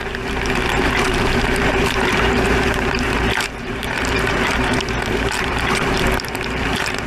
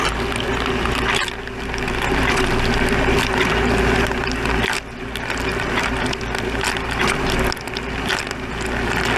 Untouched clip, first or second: second